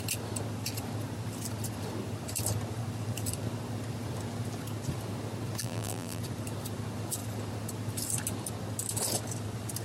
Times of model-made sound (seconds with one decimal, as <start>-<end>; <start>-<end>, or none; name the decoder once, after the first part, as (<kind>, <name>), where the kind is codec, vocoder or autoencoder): 5.6-6.2 (vocoder, BigVGAN v2)